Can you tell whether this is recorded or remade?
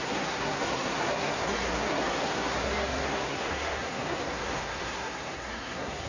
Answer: remade